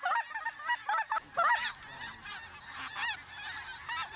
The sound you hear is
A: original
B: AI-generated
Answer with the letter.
A